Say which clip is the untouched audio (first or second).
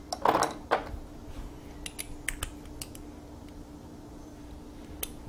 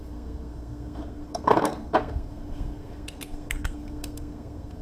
first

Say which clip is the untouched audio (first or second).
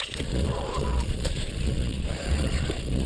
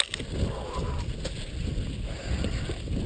second